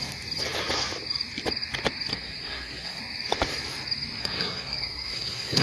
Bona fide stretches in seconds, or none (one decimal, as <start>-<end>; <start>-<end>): 0.0-2.1; 3.0-4.2